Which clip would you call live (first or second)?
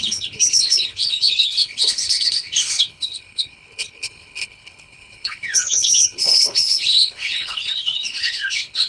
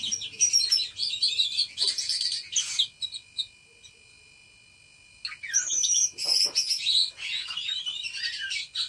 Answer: second